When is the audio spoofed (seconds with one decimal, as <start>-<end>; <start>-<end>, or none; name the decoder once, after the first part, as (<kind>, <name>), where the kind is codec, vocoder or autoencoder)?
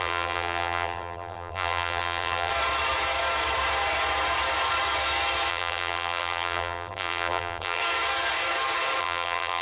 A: 0.0-2.5 (vocoder, BigVGAN v2); 5.5-7.8; 9.0-9.6